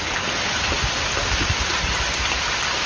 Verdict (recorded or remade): recorded